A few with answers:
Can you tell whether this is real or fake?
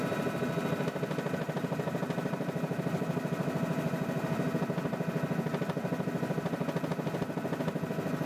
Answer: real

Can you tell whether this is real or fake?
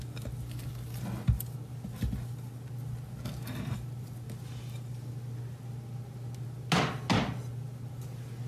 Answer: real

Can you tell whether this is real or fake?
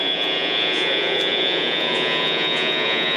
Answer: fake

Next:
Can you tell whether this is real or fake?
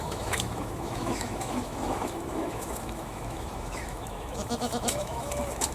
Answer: fake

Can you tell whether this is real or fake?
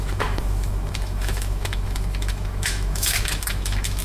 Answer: fake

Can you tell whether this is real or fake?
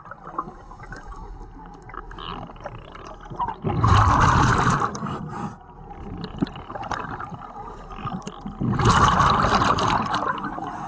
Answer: real